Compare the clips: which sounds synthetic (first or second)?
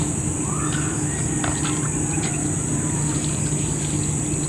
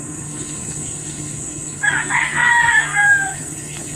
second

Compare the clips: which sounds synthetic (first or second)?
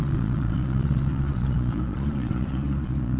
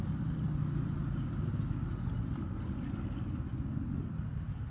first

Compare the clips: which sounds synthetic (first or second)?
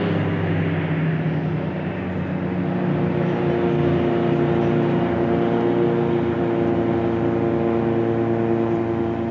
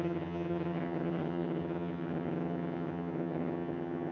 second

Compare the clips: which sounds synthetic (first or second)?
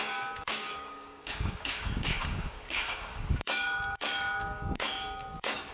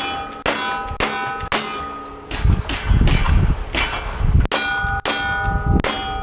first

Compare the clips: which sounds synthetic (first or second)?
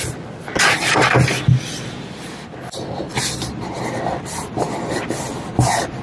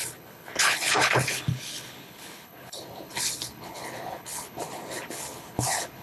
second